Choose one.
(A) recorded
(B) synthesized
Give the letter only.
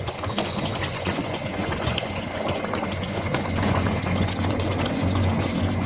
B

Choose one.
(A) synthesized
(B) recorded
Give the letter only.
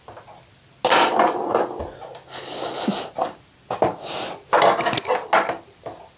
B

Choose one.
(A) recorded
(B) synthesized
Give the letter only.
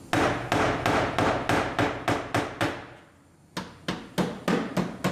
A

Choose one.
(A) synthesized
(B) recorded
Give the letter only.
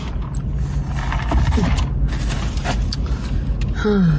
B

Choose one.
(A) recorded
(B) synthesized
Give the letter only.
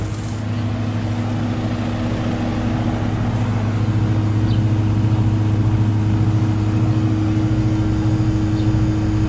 A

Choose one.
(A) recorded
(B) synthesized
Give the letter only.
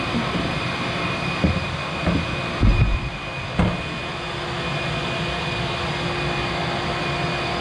A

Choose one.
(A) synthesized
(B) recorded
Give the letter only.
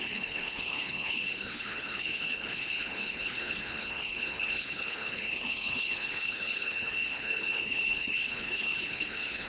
A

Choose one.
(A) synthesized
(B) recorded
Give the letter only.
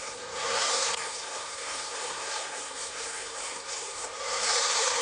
A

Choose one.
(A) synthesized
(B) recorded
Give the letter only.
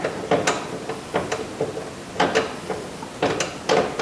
B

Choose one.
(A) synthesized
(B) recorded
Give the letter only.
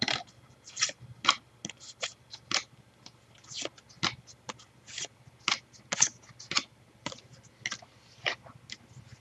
B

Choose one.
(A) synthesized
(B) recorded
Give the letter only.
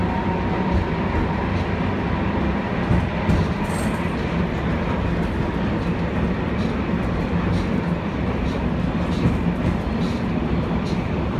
B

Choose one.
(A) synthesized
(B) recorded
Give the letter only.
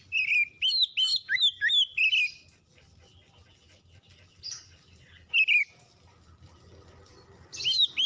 B